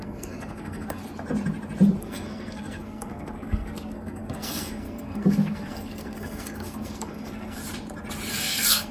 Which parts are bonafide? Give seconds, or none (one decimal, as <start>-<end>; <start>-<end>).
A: 1.0-2.0; 7.6-8.3